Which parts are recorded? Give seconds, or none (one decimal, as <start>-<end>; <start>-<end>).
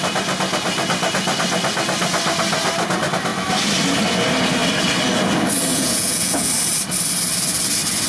0.0-5.7; 6.5-8.1